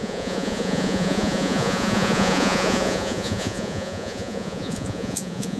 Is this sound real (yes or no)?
no